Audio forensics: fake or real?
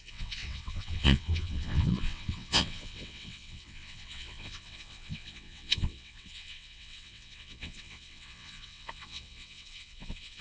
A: fake